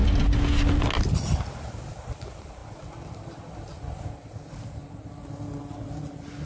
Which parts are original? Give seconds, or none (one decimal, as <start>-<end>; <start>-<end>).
0.0-6.5